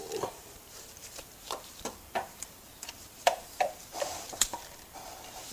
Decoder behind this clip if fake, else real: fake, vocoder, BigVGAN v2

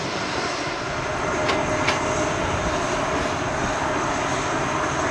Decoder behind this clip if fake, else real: real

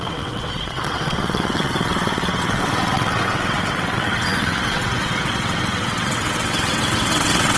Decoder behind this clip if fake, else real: fake, vocoder, WaveNeXt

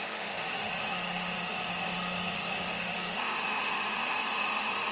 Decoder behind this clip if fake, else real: fake, autoencoder, DAC-VAE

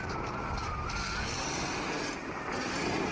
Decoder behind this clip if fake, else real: real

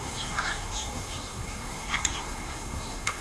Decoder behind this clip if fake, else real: fake, codec, SNAC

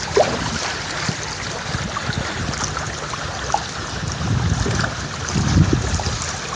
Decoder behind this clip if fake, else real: real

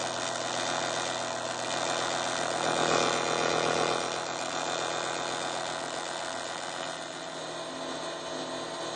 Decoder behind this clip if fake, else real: real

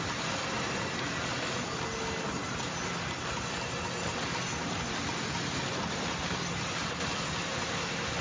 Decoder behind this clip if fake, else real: real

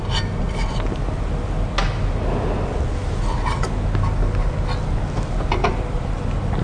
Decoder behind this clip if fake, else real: real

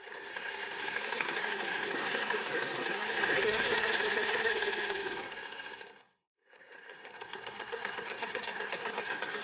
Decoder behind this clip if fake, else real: fake, codec, SNAC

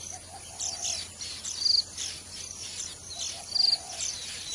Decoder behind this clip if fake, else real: real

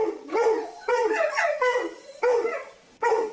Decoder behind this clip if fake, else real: fake, vocoder, Vocos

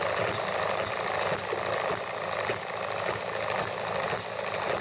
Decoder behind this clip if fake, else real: real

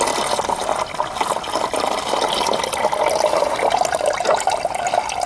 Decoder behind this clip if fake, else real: real